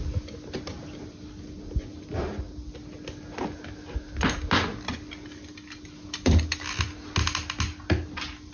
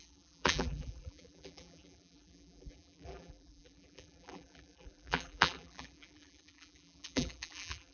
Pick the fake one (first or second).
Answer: second